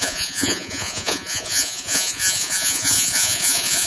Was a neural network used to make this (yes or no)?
yes